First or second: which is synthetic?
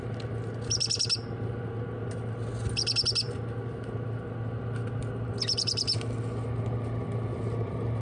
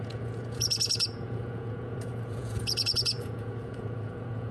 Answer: second